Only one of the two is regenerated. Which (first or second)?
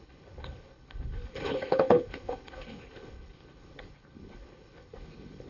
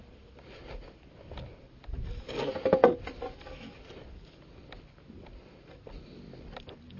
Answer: first